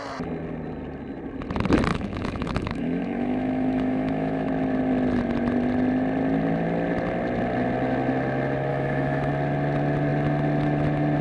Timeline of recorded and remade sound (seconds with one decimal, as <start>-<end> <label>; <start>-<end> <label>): 0.0-1.9 recorded; 1.9-4.5 remade; 4.5-8.7 recorded; 8.7-9.3 remade; 9.3-11.2 recorded